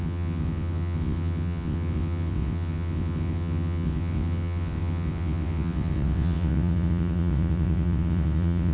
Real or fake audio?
fake